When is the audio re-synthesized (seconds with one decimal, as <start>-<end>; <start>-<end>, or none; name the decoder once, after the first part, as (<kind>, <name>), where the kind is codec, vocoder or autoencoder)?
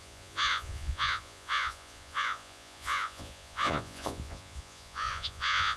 0.0-5.8 (vocoder, Vocos)